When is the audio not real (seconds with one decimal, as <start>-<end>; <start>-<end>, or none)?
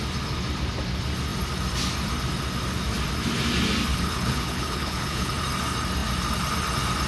3.9-5.3